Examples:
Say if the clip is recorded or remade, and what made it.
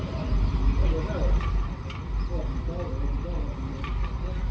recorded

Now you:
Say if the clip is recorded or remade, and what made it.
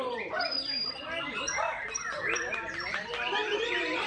remade, vocoder, BigVGAN v2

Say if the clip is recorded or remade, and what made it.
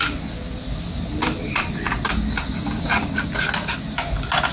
recorded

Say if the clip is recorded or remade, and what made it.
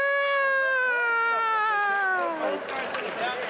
recorded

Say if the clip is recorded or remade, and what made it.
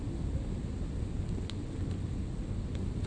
recorded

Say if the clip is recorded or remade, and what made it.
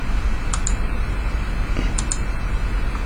recorded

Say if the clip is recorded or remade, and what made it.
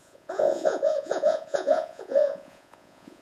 remade, vocoder, Vocos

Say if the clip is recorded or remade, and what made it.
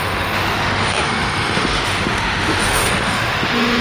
remade, autoencoder, DAC-VAE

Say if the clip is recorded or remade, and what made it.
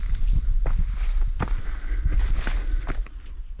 recorded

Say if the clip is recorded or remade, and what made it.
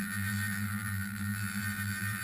remade, vocoder, BigVGAN v2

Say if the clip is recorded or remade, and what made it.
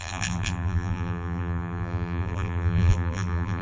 remade, vocoder, BigVGAN v2